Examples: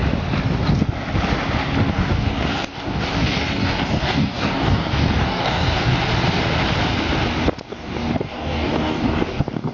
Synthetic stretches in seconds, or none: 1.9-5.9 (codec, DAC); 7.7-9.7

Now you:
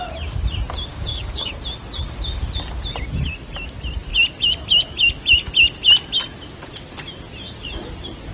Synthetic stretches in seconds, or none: 0.9-1.5 (codec, DAC)

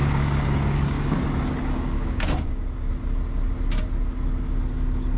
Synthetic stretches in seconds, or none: 0.0-2.9 (codec, DAC)

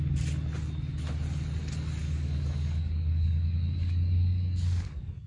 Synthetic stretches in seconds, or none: 2.0-5.3 (codec, DAC)

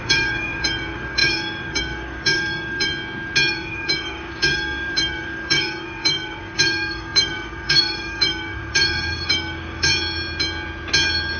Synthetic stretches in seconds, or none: 0.0-2.9 (codec, DAC); 3.5-9.9

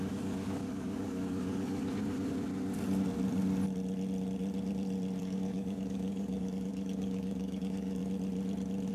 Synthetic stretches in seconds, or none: 0.0-1.8 (codec, DAC); 5.2-8.0